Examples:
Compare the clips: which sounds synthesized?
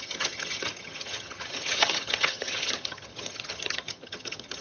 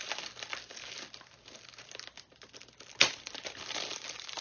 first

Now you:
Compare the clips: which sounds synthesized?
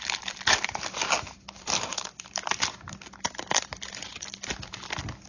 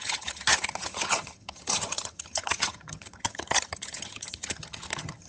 second